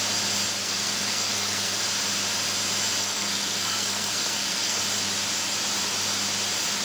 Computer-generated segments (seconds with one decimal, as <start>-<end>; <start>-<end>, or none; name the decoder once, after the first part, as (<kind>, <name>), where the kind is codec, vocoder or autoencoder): 0.6-1.8 (codec, SNAC); 3.0-4.8